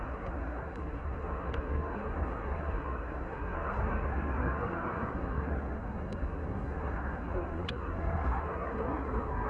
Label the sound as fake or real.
fake